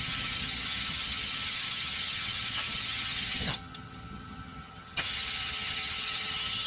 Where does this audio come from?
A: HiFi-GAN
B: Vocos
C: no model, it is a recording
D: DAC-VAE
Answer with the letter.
A